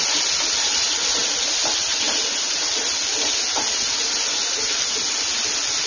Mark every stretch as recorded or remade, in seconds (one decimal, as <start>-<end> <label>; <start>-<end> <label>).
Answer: 0.0-5.9 recorded